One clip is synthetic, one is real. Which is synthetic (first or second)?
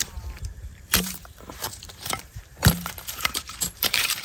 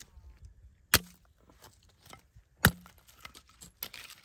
first